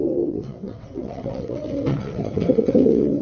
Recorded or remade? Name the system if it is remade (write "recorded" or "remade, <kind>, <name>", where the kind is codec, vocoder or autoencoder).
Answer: remade, vocoder, WaveNeXt